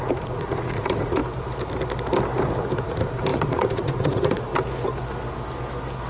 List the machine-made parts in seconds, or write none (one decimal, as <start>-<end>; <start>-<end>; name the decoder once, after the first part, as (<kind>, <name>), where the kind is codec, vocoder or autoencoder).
0.0-1.2 (vocoder, Vocos); 2.9-4.5